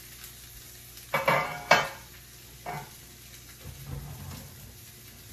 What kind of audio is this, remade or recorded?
recorded